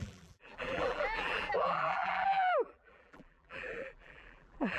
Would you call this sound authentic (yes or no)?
no